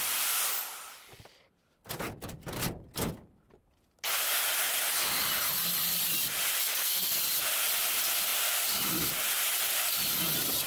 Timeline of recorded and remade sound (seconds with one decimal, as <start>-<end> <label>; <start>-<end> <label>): 0.0-6.7 recorded; 6.7-7.2 remade; 7.2-10.7 recorded